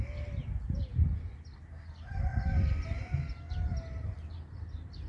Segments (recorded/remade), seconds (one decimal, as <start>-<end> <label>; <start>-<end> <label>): 0.0-5.1 recorded